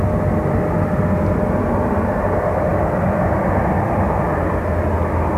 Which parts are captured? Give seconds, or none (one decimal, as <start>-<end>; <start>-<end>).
0.0-2.7; 4.6-5.4